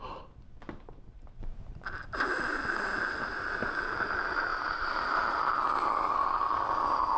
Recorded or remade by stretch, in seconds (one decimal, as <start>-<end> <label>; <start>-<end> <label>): 0.0-1.4 recorded; 1.4-2.2 remade; 2.2-4.5 recorded; 4.5-5.4 remade; 5.4-7.2 recorded